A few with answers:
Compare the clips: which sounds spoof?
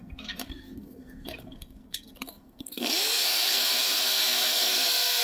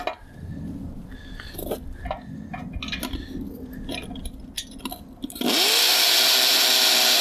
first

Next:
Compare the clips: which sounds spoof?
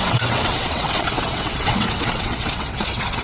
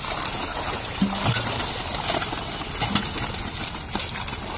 first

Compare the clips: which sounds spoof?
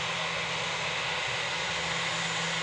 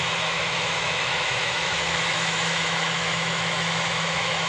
second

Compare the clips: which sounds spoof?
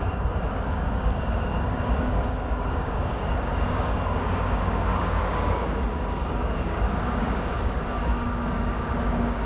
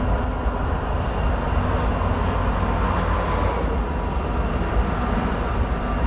first